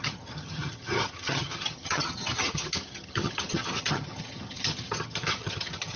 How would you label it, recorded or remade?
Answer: remade